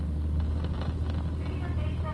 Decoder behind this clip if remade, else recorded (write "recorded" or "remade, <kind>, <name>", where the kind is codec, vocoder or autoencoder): recorded